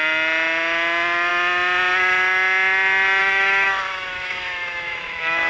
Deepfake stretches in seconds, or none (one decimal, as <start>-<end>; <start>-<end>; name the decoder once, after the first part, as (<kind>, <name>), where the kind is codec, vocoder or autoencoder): 3.2-5.5 (autoencoder, DAC-VAE)